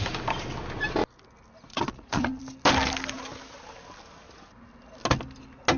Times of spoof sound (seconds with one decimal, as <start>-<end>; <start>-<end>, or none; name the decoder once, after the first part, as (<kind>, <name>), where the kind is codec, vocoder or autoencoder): 1.7-2.4 (vocoder, Vocos)